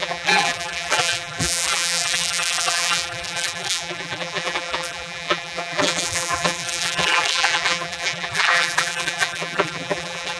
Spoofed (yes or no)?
yes